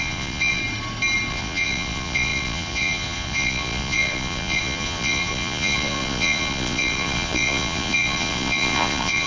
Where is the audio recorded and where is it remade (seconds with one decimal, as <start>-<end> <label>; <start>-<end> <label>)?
0.0-0.6 remade; 0.6-1.3 recorded; 1.3-9.3 remade